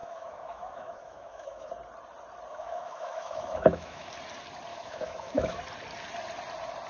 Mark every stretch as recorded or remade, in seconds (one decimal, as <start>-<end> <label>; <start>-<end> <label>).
0.0-1.7 remade; 1.7-2.5 recorded; 2.5-4.1 remade; 4.1-4.7 recorded; 4.7-5.6 remade; 5.6-6.9 recorded